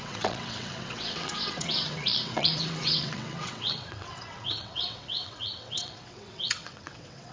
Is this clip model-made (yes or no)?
yes